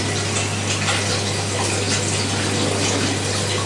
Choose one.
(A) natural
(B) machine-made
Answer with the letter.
A